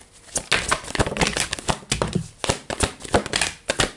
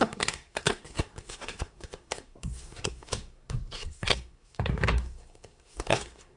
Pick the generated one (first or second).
second